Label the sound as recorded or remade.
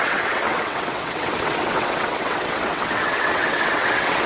remade